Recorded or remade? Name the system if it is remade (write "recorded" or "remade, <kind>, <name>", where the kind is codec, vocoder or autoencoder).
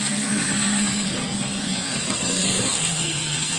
remade, codec, SNAC